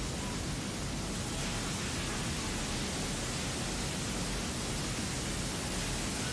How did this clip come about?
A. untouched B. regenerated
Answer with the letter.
A